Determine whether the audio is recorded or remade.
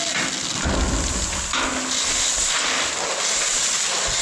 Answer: recorded